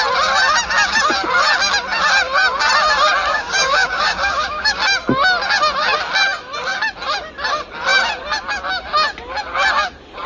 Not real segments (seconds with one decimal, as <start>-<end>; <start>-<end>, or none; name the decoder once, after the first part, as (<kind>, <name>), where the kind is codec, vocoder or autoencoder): 3.3-4.8 (codec, DAC)